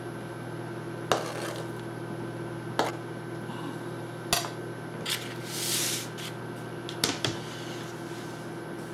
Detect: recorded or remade recorded